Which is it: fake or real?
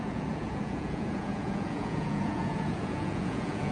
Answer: fake